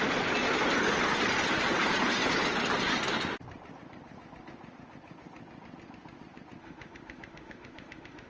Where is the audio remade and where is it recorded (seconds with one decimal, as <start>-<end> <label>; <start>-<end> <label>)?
0.0-6.6 recorded; 6.6-8.3 remade